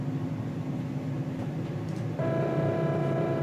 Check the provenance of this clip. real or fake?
fake